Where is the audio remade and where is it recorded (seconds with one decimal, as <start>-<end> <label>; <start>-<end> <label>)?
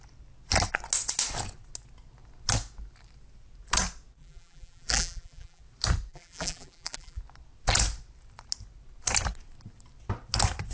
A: 0.0-4.2 recorded; 4.2-5.6 remade; 5.6-6.1 recorded; 6.1-7.2 remade; 7.2-10.7 recorded